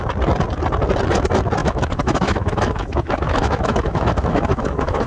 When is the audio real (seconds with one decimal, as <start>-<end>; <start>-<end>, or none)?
0.0-1.6